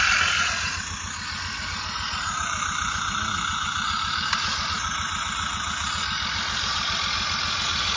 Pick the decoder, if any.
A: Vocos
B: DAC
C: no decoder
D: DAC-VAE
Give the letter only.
C